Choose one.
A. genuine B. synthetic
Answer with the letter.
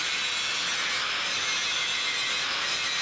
A